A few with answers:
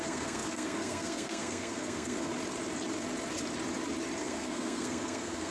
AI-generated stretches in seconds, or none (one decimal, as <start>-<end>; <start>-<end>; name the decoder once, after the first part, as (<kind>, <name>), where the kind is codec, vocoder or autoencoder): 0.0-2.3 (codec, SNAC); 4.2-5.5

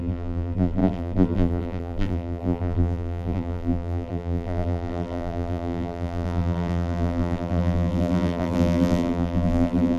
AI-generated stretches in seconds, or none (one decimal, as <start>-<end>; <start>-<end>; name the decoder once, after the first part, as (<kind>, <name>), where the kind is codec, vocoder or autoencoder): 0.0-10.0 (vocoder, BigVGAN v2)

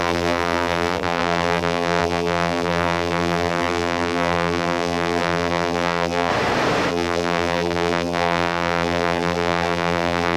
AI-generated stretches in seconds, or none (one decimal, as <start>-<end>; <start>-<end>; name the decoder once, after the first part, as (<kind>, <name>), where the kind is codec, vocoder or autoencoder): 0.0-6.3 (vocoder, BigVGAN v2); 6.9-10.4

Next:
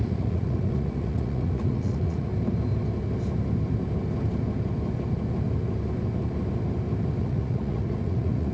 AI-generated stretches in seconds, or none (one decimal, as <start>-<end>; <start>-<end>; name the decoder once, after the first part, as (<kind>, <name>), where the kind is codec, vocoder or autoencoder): 0.0-2.3 (vocoder, Vocos); 7.2-8.5

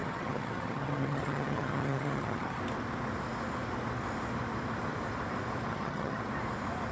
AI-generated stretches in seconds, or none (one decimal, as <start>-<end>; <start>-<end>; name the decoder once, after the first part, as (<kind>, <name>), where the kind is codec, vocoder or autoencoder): 0.0-2.6 (vocoder, HiFi-GAN); 5.7-6.2